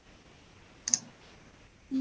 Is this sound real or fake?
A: real